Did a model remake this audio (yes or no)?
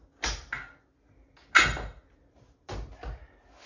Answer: no